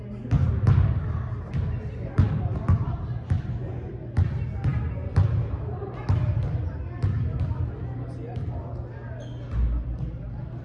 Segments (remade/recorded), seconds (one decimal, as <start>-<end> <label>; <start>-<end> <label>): 0.0-10.6 recorded